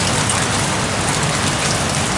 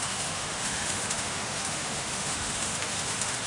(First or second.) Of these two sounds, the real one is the first